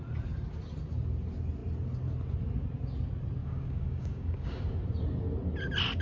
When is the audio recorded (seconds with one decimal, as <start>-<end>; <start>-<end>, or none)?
0.0-3.4; 4.6-6.0